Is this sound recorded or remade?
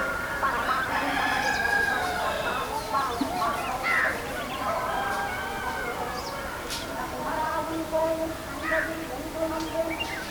recorded